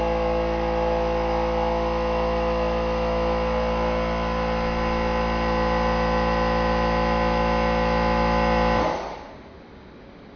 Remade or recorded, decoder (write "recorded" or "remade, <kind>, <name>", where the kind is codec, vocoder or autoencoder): recorded